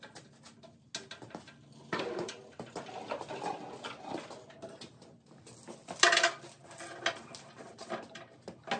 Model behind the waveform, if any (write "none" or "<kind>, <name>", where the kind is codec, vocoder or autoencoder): none